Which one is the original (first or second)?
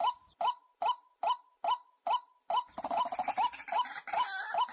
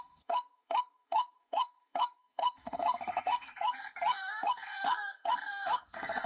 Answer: first